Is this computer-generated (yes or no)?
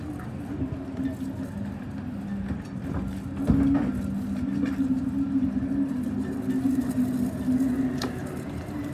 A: no